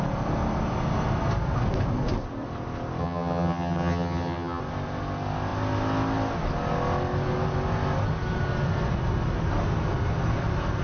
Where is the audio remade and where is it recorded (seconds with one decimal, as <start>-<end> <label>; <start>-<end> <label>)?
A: 0.0-3.0 recorded; 3.0-4.6 remade; 4.6-10.8 recorded

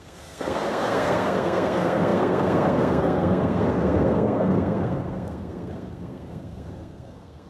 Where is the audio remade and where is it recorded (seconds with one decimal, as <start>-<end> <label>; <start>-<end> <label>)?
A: 0.0-7.5 remade

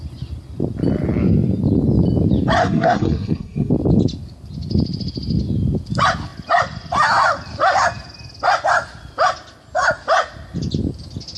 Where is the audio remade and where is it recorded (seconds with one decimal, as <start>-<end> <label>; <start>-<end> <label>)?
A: 0.0-2.6 recorded; 2.6-3.7 remade; 3.7-11.4 recorded

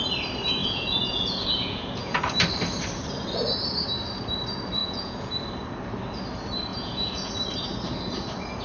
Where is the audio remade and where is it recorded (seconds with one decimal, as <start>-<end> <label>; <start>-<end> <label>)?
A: 0.0-0.6 recorded; 0.6-2.2 remade; 2.2-4.8 recorded; 4.8-5.3 remade; 5.3-6.7 recorded; 6.7-7.3 remade; 7.3-8.6 recorded

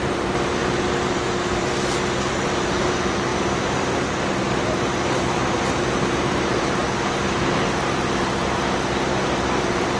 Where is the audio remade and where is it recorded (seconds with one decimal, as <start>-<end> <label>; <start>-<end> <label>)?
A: 0.0-3.3 remade; 3.3-5.8 recorded; 5.8-6.8 remade; 6.8-7.5 recorded; 7.5-10.0 remade